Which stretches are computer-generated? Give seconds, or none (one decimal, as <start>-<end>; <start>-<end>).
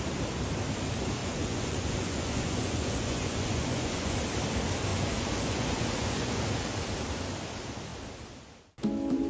1.2-4.2; 4.9-6.4